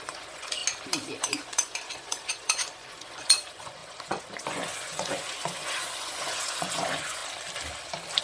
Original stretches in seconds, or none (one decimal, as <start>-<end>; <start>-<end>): 0.6-1.2; 7.2-8.2